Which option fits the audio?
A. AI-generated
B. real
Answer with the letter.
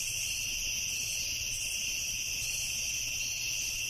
B